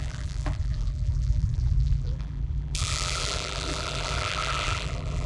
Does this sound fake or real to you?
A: fake